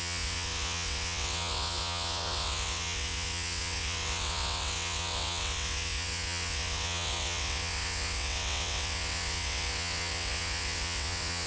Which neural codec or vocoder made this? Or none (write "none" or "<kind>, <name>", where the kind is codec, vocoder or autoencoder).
vocoder, WaveNeXt